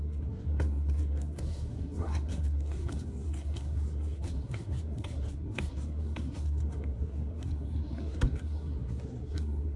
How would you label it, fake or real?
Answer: fake